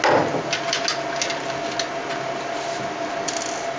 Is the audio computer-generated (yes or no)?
no